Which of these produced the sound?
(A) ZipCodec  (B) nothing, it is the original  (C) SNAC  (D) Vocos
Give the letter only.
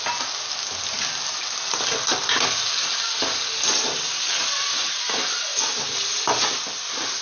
B